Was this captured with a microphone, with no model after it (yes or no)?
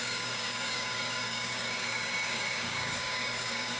no